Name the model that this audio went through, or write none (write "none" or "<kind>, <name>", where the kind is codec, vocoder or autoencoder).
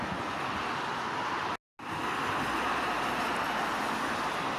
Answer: none